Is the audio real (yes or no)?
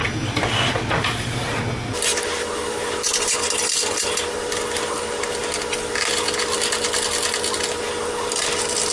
yes